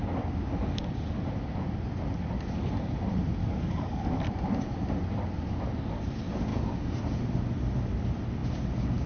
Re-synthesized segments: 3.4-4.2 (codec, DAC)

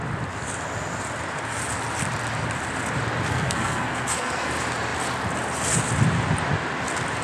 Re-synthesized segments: 3.3-4.5 (codec, SNAC)

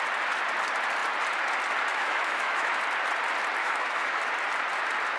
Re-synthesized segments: 1.9-2.8 (autoencoder, DAC-VAE); 3.6-4.2